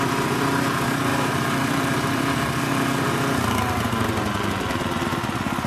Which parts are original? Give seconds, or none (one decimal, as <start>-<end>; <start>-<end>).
0.0-1.1; 2.2-5.7